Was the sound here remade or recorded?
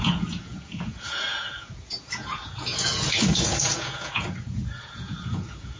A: remade